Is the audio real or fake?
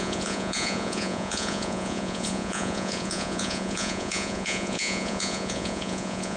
fake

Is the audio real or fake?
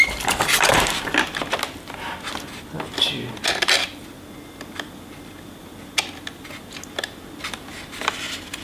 real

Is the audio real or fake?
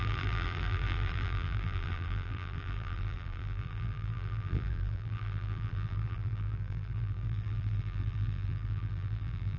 fake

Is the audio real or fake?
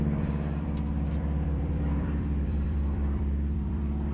fake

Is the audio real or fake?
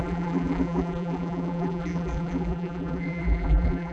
fake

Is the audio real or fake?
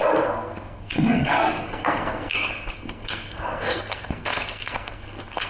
fake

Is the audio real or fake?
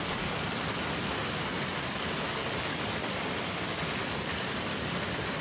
real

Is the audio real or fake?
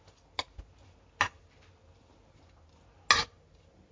real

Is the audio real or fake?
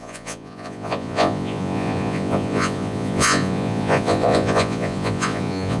fake